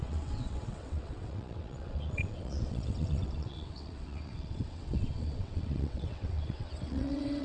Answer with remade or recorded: remade